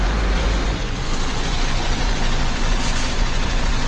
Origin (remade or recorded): remade